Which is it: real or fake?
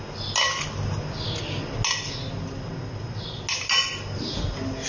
real